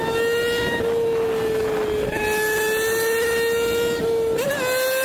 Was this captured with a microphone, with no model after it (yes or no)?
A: yes